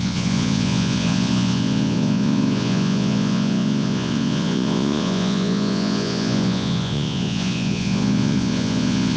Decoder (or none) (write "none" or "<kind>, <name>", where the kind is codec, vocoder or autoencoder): vocoder, Vocos